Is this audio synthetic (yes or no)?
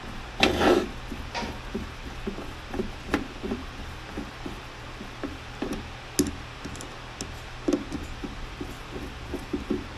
no